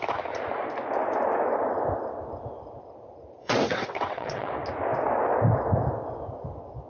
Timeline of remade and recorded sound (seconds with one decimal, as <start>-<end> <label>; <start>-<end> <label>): 0.0-3.4 recorded; 3.4-4.5 remade; 4.5-6.9 recorded